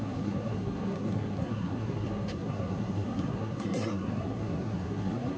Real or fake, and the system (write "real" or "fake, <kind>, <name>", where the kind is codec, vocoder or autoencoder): fake, codec, SNAC